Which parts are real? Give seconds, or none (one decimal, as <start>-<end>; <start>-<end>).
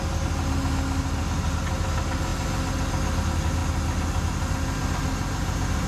0.0-5.9